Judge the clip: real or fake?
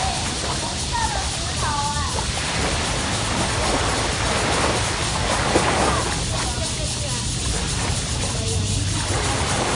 real